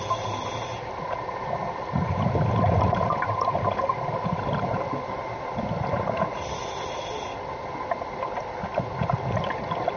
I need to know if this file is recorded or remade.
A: recorded